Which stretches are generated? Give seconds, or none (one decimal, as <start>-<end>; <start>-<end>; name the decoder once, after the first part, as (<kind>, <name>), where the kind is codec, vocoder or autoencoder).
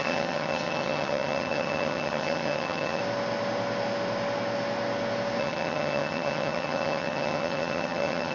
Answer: 0.0-3.0 (vocoder, HiFi-GAN); 5.4-8.3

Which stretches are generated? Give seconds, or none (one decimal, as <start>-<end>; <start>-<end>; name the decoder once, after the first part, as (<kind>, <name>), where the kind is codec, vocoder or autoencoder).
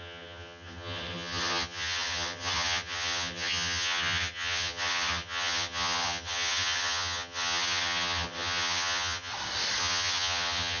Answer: 0.0-9.3 (vocoder, HiFi-GAN); 9.8-10.8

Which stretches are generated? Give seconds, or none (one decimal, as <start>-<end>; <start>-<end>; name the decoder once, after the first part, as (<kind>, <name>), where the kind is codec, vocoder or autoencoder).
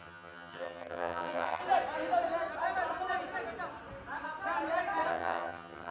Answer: 0.0-1.6 (vocoder, HiFi-GAN); 5.1-5.9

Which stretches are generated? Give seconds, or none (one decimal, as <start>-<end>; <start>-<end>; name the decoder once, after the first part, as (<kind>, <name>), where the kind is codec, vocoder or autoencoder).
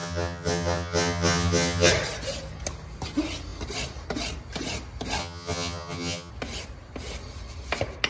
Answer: 0.0-1.9 (vocoder, HiFi-GAN); 5.2-6.3